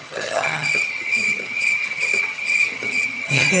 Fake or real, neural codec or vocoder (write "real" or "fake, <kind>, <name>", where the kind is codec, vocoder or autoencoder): fake, vocoder, HiFi-GAN